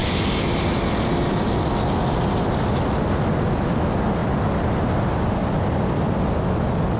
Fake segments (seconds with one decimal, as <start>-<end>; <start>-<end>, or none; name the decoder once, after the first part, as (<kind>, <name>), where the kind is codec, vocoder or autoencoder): none